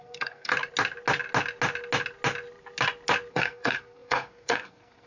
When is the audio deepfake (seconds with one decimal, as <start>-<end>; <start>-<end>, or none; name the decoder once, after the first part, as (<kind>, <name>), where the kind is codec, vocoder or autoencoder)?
0.0-0.5 (codec, SNAC); 3.3-5.1